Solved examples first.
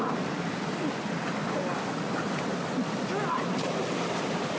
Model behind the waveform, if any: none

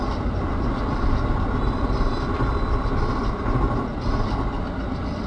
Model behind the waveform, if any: none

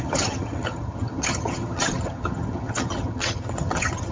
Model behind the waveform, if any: vocoder, HiFi-GAN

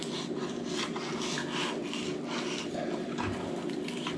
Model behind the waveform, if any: none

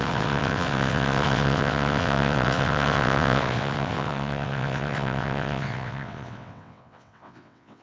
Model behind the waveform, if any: vocoder, WaveNeXt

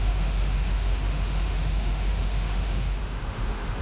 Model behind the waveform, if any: autoencoder, DAC-VAE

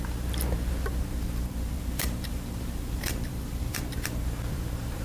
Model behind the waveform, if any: vocoder, BigVGAN v2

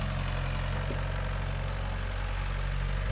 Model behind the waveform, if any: none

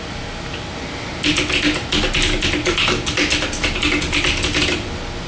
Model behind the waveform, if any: none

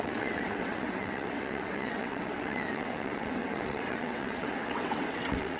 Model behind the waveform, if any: vocoder, WaveNeXt